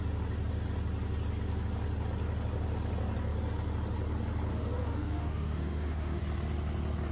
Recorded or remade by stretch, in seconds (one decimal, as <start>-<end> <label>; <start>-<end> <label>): 0.0-4.5 recorded; 4.5-6.2 remade; 6.2-7.1 recorded